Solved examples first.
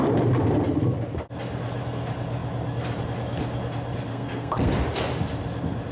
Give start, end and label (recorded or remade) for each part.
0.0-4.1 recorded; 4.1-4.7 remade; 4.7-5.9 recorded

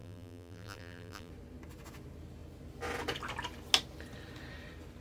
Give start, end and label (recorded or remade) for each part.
0.0-1.3 remade; 1.3-5.0 recorded